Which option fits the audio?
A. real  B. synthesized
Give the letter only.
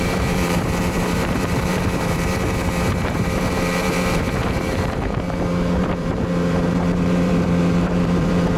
B